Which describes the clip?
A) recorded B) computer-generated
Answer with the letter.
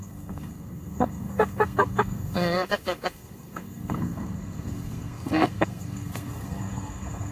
B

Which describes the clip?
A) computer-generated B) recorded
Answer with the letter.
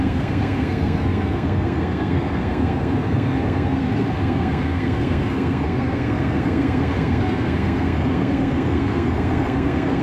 A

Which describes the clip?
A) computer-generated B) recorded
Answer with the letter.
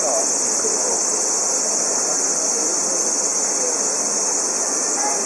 B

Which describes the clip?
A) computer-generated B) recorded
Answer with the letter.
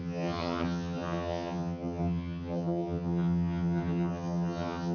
A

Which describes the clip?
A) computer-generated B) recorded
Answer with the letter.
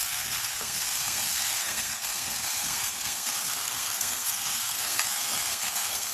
A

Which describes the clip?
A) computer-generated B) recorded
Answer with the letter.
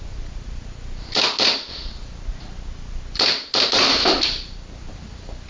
B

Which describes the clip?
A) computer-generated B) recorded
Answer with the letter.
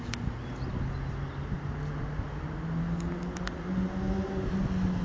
B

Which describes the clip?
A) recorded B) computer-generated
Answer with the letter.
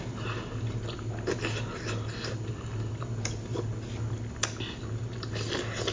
A